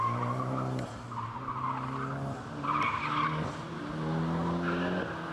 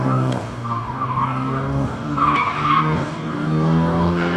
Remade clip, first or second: second